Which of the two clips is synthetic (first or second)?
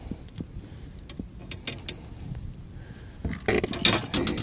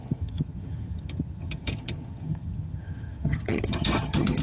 second